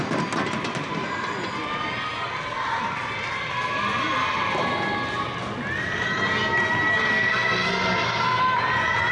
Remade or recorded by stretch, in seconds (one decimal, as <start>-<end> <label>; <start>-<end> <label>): 0.0-7.1 recorded; 7.1-8.4 remade; 8.4-9.1 recorded